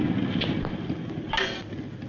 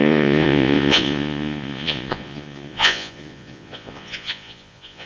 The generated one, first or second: second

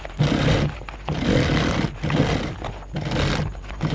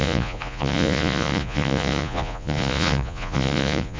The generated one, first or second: second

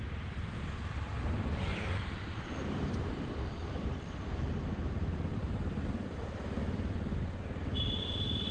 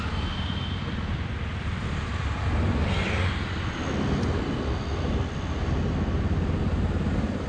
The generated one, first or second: first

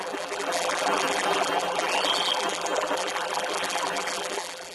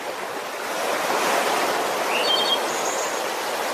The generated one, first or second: first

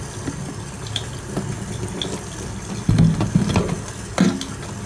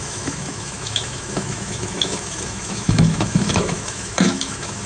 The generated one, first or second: second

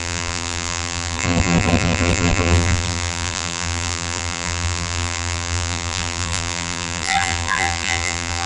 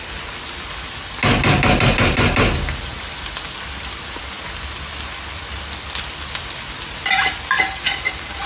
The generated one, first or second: first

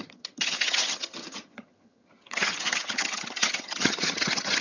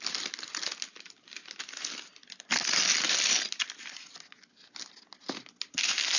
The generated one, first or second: first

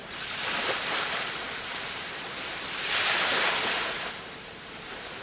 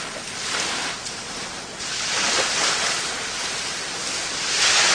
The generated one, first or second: first